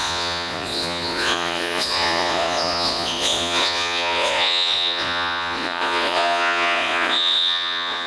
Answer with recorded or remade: remade